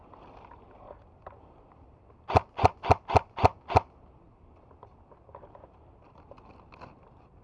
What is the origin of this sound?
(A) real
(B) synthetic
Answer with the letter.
A